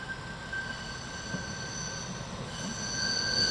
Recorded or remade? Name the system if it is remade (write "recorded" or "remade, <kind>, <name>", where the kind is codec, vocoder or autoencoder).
recorded